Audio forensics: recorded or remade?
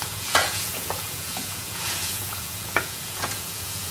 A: remade